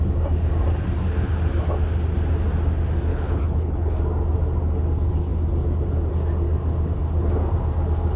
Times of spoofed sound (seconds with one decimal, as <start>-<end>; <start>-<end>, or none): 3.1-4.0